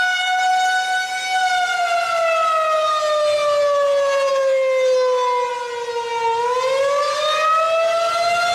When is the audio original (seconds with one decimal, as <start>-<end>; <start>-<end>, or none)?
0.0-8.5